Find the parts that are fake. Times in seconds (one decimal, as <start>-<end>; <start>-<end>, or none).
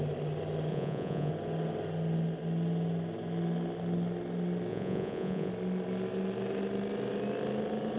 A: 0.7-1.3; 4.7-5.5